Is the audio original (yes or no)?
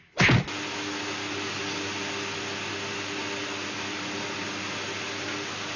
yes